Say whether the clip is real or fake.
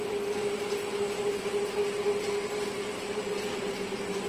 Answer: real